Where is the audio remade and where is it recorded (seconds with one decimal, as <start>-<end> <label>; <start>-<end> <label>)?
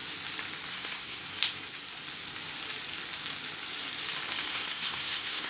0.0-0.7 recorded; 0.7-1.2 remade; 1.2-4.5 recorded; 4.5-5.5 remade